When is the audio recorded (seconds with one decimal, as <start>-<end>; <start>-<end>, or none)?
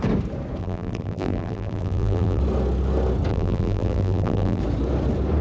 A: 0.0-0.6; 2.4-3.3; 4.6-5.4